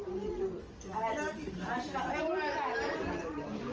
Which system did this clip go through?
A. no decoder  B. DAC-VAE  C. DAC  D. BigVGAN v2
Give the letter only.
D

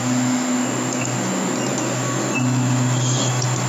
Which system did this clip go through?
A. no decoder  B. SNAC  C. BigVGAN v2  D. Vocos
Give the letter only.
A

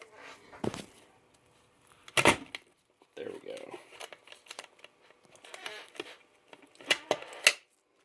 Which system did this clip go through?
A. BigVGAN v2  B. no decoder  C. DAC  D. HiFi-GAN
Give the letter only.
B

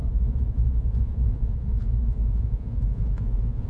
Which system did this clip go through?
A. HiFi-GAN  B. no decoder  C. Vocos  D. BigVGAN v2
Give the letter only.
C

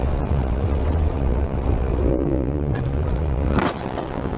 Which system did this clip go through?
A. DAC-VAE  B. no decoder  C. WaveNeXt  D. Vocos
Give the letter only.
C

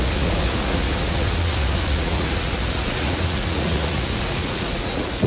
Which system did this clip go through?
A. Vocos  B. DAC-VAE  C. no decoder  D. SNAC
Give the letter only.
A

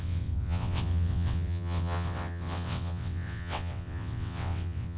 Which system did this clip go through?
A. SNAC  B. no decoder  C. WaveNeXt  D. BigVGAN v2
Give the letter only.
C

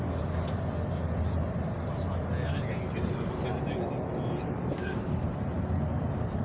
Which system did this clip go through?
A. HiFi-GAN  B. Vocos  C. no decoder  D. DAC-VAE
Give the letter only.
C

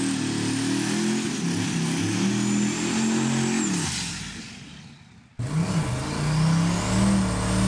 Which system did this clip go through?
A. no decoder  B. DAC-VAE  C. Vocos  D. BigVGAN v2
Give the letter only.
A